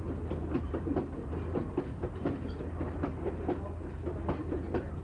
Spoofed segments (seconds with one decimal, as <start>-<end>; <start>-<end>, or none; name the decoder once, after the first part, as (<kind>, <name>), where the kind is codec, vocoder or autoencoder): 0.4-1.3 (vocoder, BigVGAN v2); 1.9-2.7